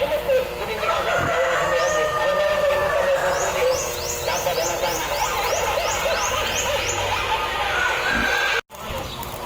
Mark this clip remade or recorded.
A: recorded